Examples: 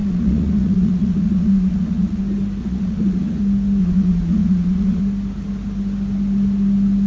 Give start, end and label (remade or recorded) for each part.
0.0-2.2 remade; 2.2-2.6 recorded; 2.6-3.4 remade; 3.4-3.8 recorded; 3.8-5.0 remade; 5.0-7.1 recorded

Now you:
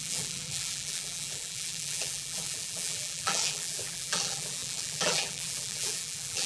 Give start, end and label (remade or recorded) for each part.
0.0-6.5 remade

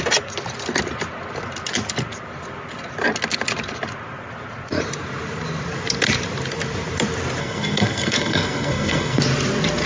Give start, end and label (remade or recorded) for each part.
0.0-7.4 recorded; 7.4-9.2 remade; 9.2-9.9 recorded

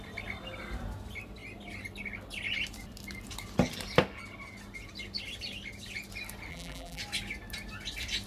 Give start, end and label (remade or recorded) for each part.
0.0-6.5 recorded; 6.5-7.0 remade; 7.0-8.3 recorded

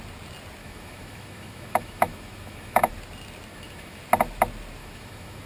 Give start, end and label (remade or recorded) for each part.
0.0-0.6 recorded; 0.6-2.9 remade; 2.9-3.5 recorded; 3.5-4.0 remade; 4.0-4.8 recorded; 4.8-5.5 remade